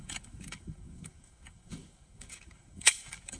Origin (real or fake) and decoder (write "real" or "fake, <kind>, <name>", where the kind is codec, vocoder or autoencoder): fake, codec, DAC